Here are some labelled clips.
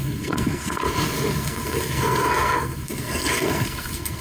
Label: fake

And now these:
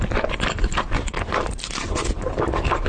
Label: real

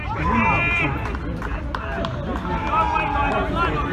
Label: real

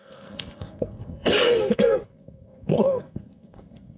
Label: fake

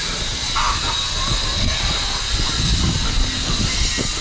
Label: real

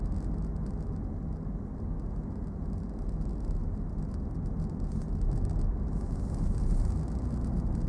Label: real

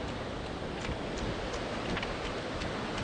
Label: real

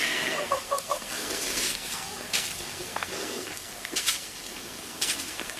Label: fake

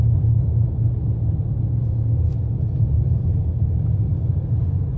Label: real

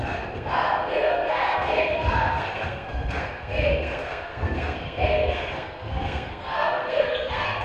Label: fake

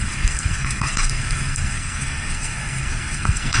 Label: fake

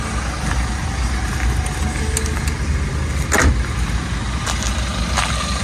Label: real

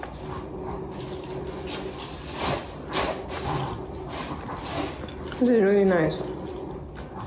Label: real